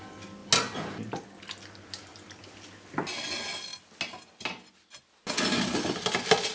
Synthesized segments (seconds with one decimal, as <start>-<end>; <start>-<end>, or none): none